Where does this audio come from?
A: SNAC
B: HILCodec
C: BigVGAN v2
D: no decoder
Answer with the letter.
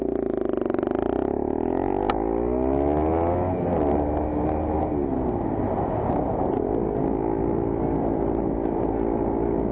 D